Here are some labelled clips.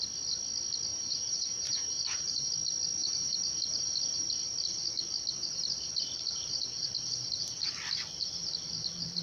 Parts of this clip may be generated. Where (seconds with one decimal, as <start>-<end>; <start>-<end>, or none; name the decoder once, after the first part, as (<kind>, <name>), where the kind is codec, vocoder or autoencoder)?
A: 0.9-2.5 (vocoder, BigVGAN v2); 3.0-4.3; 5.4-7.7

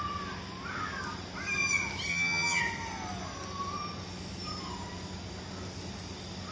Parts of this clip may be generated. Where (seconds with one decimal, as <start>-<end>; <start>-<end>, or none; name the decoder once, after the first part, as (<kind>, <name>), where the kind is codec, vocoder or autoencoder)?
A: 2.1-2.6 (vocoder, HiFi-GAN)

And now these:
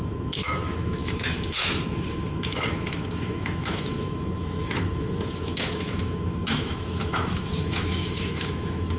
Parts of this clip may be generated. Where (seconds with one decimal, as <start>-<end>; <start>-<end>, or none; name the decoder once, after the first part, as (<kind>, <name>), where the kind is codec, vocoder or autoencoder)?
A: 0.0-9.0 (autoencoder, DAC-VAE)

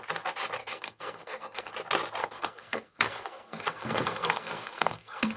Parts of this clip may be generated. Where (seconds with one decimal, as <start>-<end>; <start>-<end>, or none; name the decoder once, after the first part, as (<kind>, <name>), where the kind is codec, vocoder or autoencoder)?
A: 0.6-1.7 (codec, SNAC); 2.2-5.4

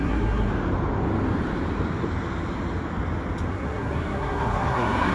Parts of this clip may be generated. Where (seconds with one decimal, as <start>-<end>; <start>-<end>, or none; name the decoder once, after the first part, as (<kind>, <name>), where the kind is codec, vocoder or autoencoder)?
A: 0.0-0.5 (codec, SNAC); 3.5-5.1